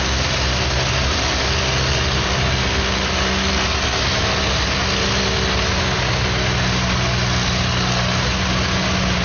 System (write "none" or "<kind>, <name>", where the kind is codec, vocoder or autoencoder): none